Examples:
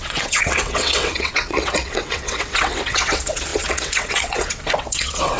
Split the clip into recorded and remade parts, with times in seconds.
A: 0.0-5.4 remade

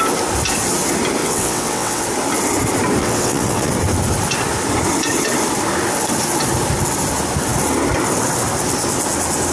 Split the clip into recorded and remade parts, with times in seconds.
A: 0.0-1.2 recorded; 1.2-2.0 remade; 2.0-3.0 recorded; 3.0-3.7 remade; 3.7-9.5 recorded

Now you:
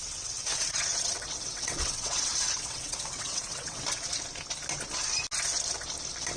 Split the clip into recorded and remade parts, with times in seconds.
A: 0.0-3.8 remade; 3.8-6.4 recorded

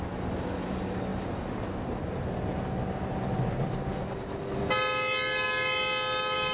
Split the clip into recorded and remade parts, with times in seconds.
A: 0.0-6.5 recorded

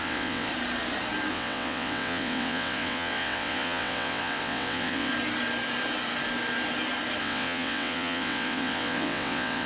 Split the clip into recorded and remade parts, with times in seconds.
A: 0.0-0.5 remade; 0.5-1.3 recorded; 1.3-5.1 remade; 5.1-7.2 recorded; 7.2-9.7 remade

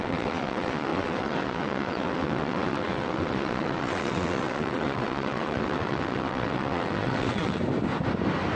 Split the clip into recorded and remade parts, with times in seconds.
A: 0.0-7.6 remade; 7.6-8.6 recorded

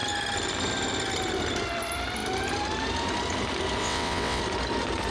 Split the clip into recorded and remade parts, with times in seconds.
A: 0.0-3.8 recorded; 3.8-4.4 remade; 4.4-5.1 recorded